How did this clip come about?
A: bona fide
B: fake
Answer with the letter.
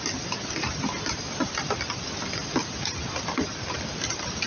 A